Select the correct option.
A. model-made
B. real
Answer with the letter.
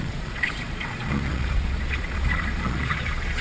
A